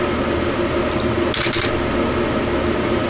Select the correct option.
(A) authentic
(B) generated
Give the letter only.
A